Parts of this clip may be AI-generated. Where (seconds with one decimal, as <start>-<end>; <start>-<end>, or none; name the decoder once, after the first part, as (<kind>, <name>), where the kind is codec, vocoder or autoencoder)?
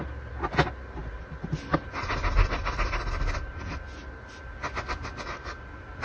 none